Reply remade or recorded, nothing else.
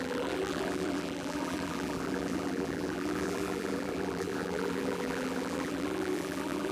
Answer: remade